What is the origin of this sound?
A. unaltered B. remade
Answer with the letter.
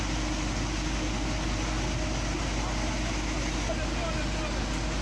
A